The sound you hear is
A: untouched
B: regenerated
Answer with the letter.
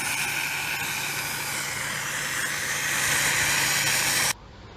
A